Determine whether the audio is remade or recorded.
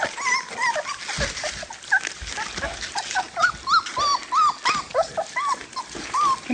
recorded